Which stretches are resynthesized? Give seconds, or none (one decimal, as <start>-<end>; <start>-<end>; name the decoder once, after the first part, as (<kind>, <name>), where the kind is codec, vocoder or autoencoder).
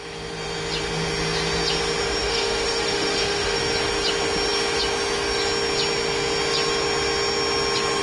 2.2-3.6 (autoencoder, DAC-VAE)